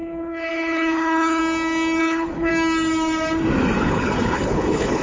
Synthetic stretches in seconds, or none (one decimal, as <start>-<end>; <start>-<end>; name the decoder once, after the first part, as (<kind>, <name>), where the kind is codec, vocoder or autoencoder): 0.0-1.4 (codec, HILCodec); 2.0-2.5; 3.8-5.0